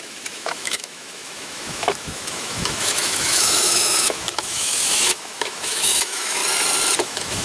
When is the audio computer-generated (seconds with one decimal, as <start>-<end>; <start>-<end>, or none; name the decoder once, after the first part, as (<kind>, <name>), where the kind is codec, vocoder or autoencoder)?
0.0-6.4 (autoencoder, DAC-VAE); 7.0-7.4